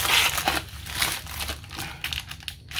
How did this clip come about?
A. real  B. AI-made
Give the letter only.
A